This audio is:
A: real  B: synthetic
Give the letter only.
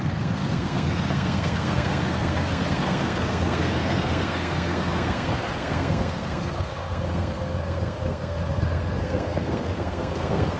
B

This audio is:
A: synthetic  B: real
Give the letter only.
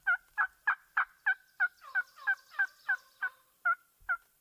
B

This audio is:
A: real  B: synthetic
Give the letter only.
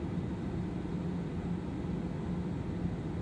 A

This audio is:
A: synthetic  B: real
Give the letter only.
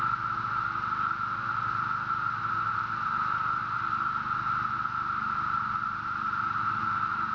B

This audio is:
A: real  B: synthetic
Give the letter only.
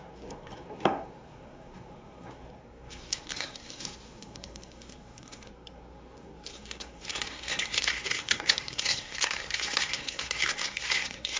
B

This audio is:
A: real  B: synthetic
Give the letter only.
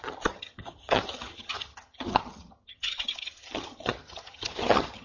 B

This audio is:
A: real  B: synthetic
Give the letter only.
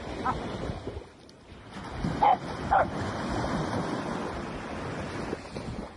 A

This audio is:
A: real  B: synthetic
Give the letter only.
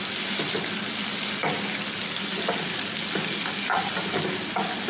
A